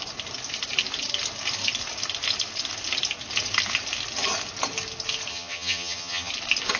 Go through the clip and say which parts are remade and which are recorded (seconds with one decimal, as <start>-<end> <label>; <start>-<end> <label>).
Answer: 0.0-5.3 recorded; 5.3-6.3 remade; 6.3-6.8 recorded